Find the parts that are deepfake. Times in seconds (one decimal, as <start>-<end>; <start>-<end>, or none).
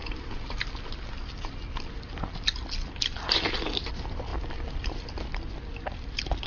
none